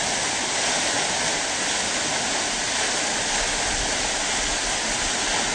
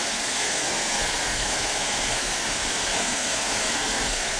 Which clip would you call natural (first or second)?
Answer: first